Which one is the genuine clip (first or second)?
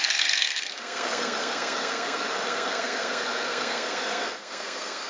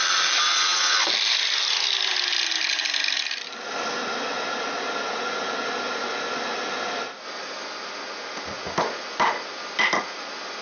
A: second